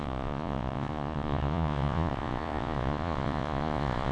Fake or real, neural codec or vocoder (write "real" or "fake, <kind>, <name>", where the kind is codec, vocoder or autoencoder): fake, vocoder, Vocos